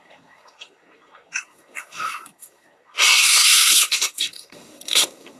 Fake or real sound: fake